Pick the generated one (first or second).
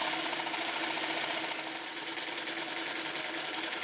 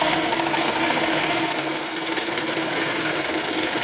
second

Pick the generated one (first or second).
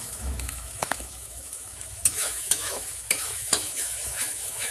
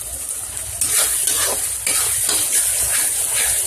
first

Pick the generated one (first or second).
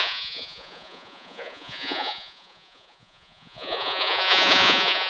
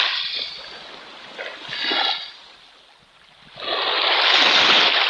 first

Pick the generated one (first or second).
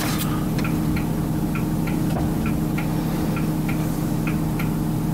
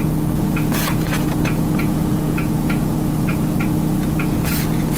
second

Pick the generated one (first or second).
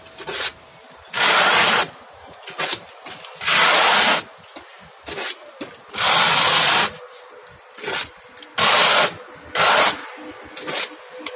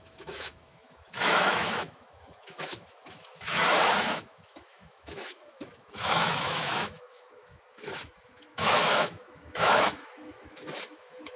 second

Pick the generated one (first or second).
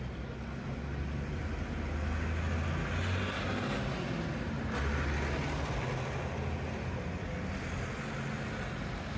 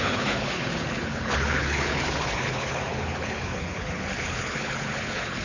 second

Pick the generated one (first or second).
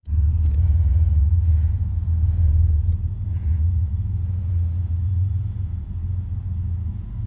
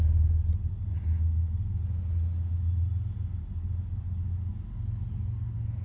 first